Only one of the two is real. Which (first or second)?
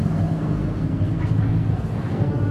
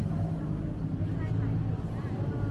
second